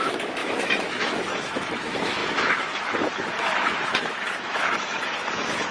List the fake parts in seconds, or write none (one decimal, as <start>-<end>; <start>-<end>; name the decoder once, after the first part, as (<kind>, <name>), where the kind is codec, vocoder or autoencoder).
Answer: 0.0-5.7 (autoencoder, DAC-VAE)